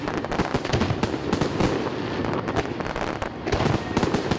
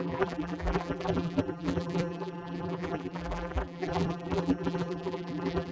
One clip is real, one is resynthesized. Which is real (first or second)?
first